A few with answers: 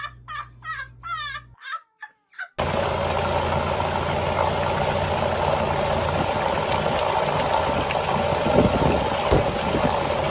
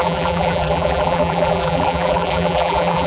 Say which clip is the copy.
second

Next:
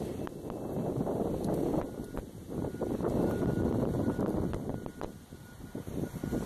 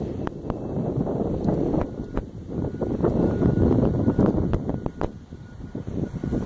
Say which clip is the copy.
second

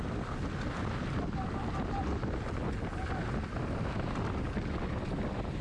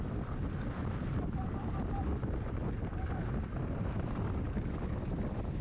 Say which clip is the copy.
second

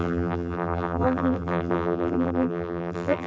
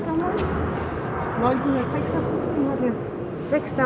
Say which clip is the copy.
first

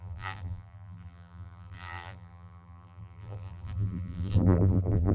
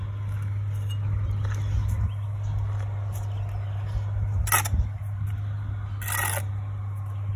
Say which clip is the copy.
first